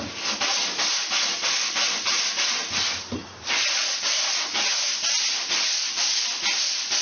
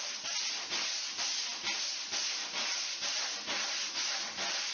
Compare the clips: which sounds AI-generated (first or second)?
first